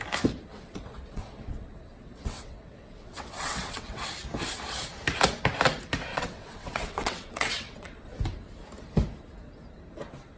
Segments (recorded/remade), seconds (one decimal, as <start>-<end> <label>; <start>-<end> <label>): 0.0-0.5 recorded; 0.5-4.1 remade; 4.1-6.1 recorded; 6.1-8.1 remade; 8.1-10.4 recorded